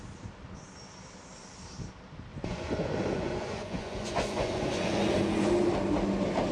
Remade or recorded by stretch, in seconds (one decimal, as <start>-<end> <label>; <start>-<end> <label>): 0.0-2.3 recorded; 2.3-5.4 remade; 5.4-6.5 recorded